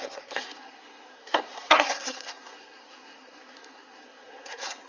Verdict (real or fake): fake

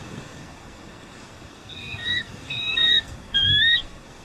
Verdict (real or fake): fake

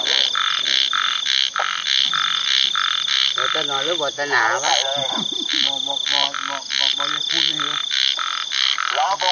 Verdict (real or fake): real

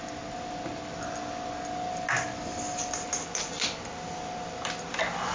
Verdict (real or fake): real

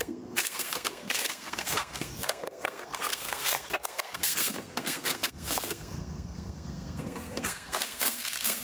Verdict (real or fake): fake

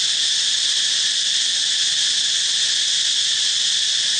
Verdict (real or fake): real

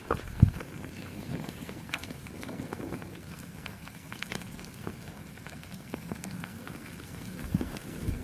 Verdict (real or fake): fake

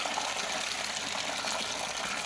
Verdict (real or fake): real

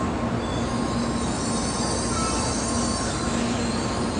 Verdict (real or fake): real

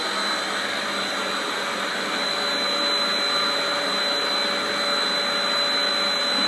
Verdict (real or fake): real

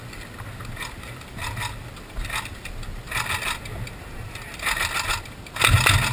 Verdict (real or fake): real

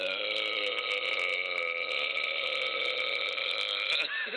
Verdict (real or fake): real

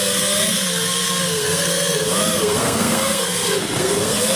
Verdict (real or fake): fake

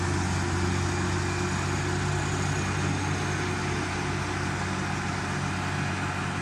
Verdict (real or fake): real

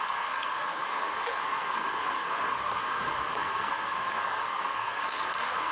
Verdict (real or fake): fake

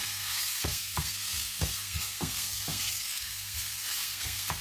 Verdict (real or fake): fake